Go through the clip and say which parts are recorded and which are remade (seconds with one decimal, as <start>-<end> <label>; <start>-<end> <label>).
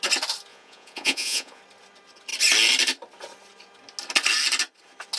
0.0-0.5 recorded; 0.5-1.6 remade; 1.6-5.2 recorded